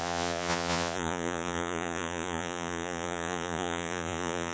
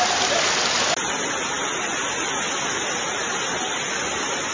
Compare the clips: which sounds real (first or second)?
second